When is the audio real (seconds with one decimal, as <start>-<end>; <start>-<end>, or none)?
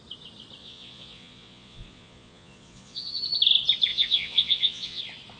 0.0-0.6; 3.2-3.9; 5.0-5.4